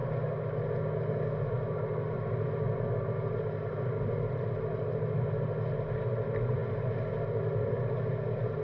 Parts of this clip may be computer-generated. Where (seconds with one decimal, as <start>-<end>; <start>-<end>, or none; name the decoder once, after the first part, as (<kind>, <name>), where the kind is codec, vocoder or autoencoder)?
none